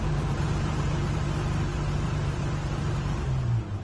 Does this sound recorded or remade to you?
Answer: remade